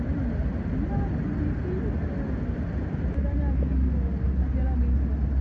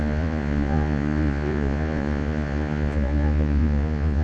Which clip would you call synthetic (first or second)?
second